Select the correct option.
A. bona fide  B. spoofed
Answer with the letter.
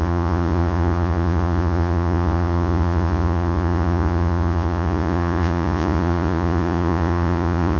B